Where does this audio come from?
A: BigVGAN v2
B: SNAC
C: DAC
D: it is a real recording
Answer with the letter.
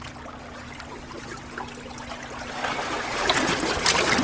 D